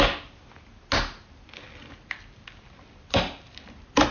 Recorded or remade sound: recorded